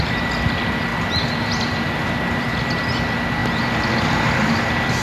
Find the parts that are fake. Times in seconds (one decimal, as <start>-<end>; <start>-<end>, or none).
0.9-2.8